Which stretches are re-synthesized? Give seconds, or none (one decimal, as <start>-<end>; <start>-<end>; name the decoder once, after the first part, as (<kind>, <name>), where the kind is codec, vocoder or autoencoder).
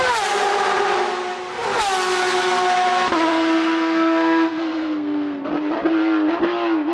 3.3-5.5 (codec, SNAC)